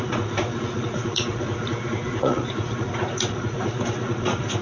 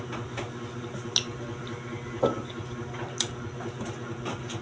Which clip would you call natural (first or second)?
second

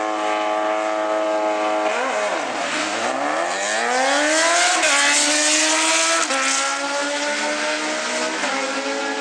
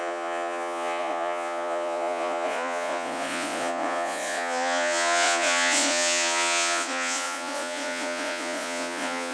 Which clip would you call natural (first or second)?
first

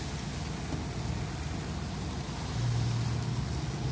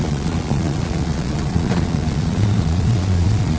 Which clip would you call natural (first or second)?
first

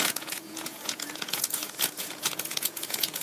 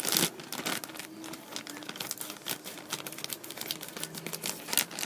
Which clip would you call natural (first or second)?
second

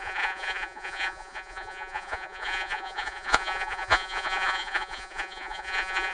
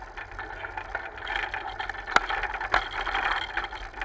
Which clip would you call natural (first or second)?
second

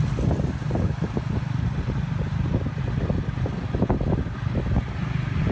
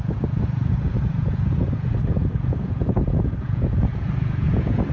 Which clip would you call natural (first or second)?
first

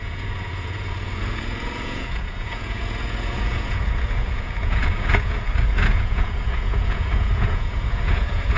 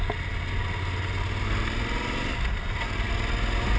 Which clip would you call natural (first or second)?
second